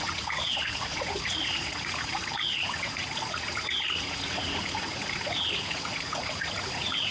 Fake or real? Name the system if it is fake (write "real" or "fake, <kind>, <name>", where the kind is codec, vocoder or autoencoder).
fake, vocoder, Vocos